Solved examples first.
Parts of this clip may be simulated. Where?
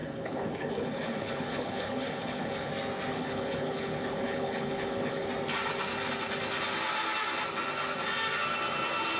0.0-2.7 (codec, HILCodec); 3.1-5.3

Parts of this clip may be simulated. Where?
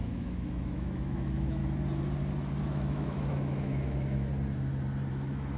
0.0-1.6 (autoencoder, DAC-VAE); 2.6-4.3; 5.1-5.6